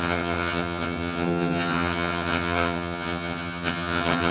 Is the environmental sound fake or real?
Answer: fake